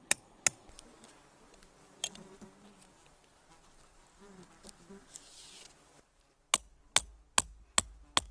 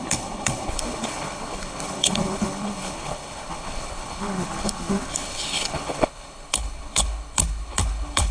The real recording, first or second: first